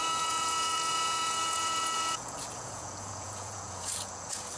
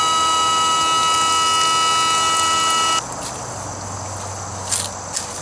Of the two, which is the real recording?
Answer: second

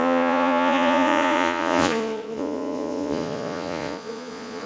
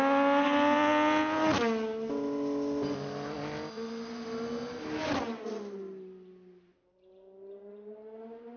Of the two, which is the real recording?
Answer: second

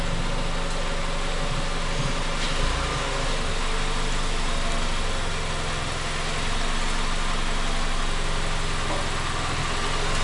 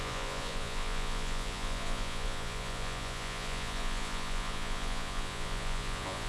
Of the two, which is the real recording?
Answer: first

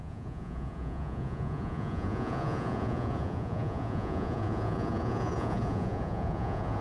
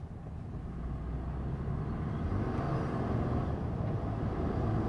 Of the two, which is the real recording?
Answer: second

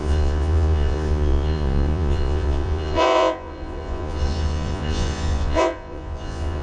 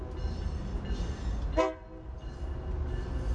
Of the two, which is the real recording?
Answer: second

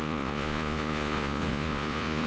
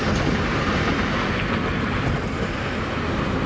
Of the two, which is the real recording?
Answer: second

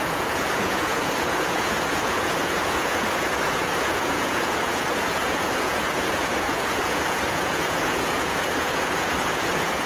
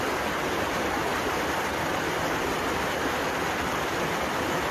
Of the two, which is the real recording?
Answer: second